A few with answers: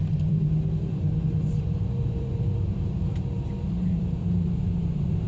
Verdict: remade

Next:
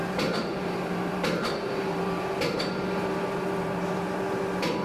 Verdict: remade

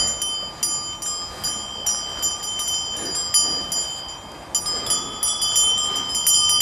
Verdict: recorded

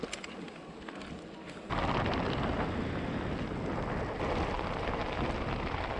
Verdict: recorded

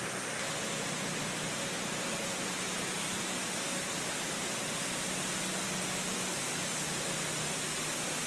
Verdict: recorded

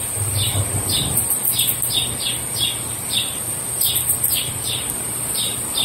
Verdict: recorded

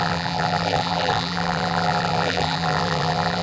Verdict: remade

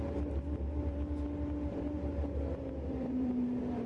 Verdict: remade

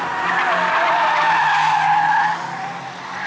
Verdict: recorded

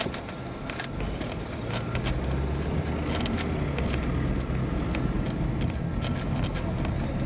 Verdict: recorded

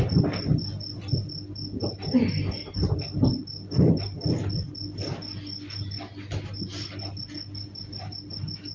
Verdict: recorded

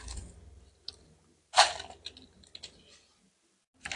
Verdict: recorded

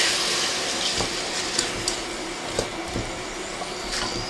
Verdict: remade